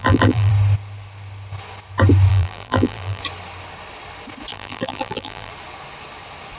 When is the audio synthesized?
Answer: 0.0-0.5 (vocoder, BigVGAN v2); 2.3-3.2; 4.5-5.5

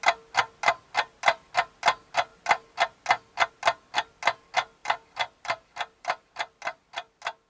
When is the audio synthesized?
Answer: 4.8-6.6 (vocoder, BigVGAN v2)

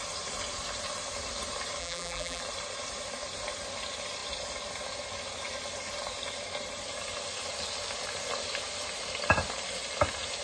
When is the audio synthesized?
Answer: 1.8-2.4 (vocoder, BigVGAN v2)

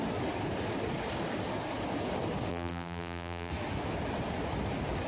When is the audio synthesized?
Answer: 2.5-3.5 (vocoder, BigVGAN v2)

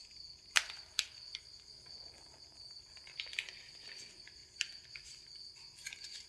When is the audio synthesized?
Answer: 0.0-3.8 (vocoder, BigVGAN v2)